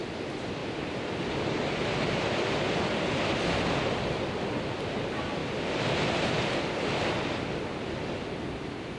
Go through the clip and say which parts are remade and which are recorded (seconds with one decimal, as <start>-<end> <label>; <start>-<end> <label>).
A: 0.0-9.0 recorded